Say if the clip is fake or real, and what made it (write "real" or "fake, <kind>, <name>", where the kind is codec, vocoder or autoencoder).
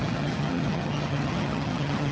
fake, vocoder, HiFi-GAN